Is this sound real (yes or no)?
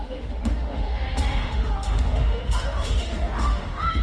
no